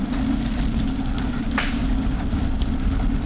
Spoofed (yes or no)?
no